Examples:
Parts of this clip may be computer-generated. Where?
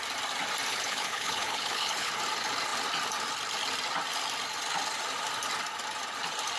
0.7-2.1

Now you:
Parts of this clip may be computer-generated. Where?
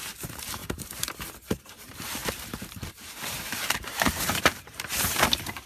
0.0-5.7